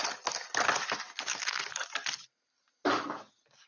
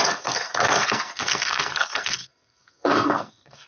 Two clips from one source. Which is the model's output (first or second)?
second